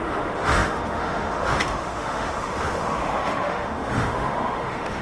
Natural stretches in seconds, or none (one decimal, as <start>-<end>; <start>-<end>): none